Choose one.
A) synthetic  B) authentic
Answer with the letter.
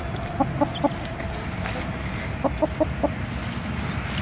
B